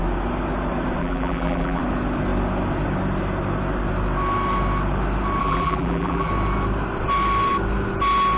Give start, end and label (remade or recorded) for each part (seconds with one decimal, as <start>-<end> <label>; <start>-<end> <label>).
0.0-1.0 recorded; 1.0-1.8 remade; 1.8-5.4 recorded; 5.4-6.3 remade; 6.3-8.4 recorded